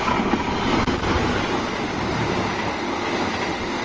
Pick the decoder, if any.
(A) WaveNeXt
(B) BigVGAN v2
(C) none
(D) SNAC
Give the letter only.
C